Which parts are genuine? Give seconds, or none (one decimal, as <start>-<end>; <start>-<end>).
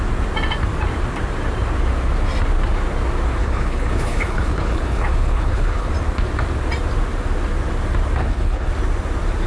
0.0-3.4; 5.9-8.2; 8.7-9.5